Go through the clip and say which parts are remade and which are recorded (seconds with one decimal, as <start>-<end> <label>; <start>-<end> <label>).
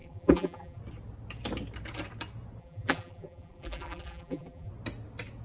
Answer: 0.0-0.8 remade; 0.8-2.6 recorded; 2.6-4.7 remade; 4.7-5.4 recorded